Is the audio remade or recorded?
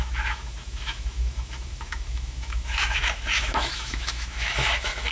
remade